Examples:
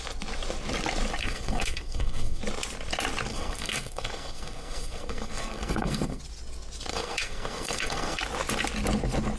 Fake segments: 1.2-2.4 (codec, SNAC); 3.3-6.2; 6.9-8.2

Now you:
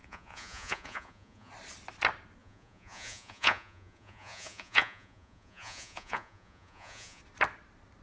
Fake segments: 0.0-1.5 (vocoder, Vocos); 2.4-7.2